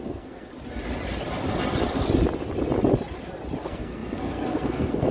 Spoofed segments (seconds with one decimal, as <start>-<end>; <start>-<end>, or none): 0.0-0.5; 3.6-5.1

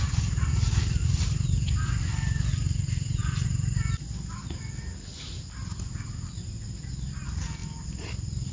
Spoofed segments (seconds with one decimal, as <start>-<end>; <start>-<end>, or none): none

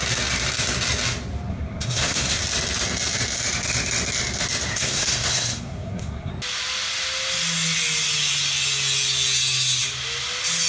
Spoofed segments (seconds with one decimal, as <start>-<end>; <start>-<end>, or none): 1.5-2.4; 4.7-6.3

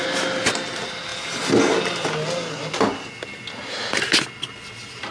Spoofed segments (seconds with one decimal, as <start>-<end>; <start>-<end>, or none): none